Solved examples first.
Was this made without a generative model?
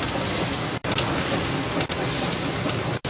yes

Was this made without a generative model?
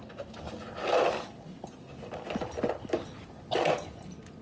yes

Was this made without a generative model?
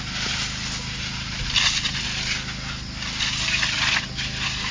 yes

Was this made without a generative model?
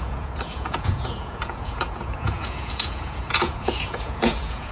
no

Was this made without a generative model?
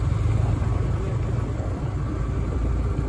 yes